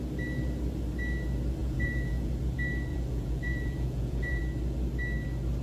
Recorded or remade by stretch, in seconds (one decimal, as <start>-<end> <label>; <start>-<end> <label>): 0.0-1.6 recorded; 1.6-2.3 remade; 2.3-2.9 recorded; 2.9-4.4 remade; 4.4-5.6 recorded